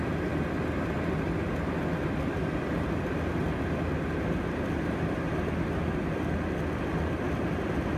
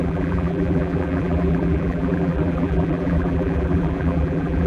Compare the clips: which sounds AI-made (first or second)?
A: second